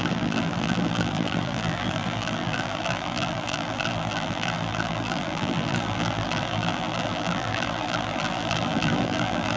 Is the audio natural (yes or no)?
no